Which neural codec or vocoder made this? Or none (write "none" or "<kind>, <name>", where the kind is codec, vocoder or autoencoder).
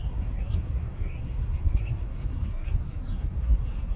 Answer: codec, SNAC